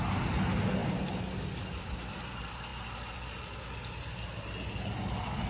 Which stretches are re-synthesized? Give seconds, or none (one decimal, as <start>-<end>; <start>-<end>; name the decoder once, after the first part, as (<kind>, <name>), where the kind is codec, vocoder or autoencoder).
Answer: none